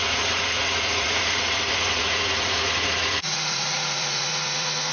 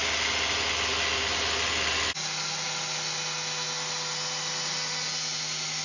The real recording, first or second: second